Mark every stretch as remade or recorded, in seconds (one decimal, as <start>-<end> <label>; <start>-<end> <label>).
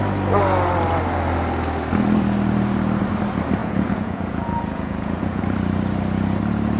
0.0-3.6 recorded; 3.6-5.4 remade; 5.4-6.8 recorded